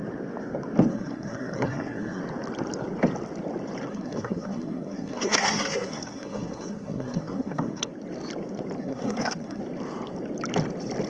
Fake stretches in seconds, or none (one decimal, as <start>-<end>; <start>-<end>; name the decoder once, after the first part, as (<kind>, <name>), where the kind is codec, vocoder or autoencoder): 0.9-2.2 (codec, SNAC); 3.9-7.9; 8.8-9.6